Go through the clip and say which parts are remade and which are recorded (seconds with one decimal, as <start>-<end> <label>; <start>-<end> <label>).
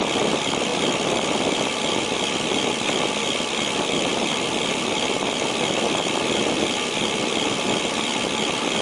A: 0.0-8.8 recorded